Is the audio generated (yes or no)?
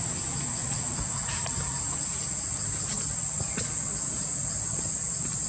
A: no